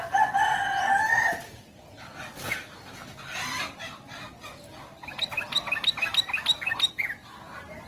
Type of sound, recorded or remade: recorded